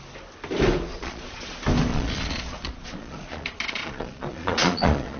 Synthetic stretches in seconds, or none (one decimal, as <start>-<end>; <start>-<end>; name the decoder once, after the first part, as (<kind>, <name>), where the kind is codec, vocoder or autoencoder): 0.9-1.5 (vocoder, Vocos); 1.9-5.2